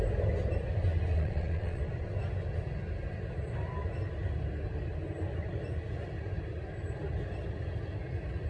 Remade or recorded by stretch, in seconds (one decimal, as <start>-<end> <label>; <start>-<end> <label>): 0.0-1.1 recorded; 1.1-1.8 remade; 1.8-8.5 recorded